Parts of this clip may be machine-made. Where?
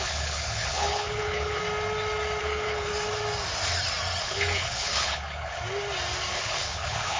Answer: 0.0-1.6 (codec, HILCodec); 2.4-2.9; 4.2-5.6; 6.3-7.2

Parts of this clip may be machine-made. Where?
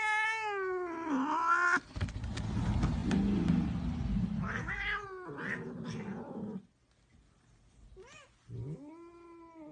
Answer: none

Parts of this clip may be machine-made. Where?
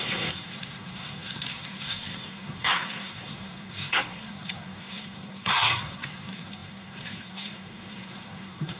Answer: 0.0-8.8 (codec, SNAC)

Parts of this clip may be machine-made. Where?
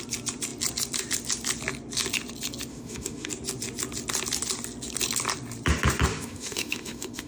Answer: 2.7-3.3 (autoencoder, DAC-VAE); 6.1-7.3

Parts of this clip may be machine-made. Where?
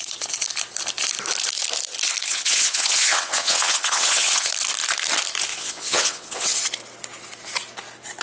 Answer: 2.3-4.5 (vocoder, WaveNeXt); 5.5-6.5